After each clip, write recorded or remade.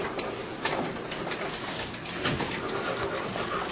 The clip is recorded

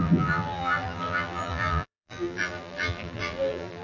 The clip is remade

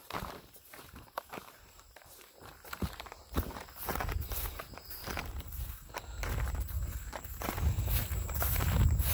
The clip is remade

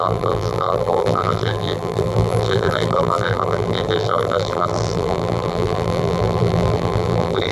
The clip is remade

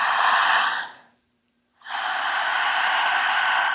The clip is remade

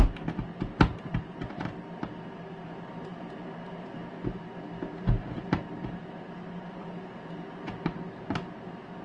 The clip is recorded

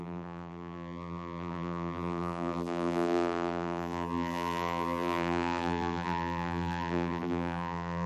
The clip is remade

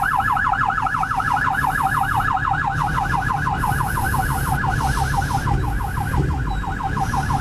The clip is remade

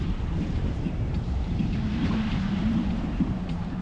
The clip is remade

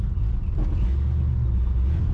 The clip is recorded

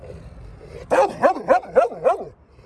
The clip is remade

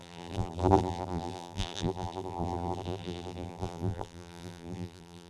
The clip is remade